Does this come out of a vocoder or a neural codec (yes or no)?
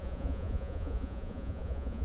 yes